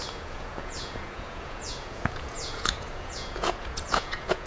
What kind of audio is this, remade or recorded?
remade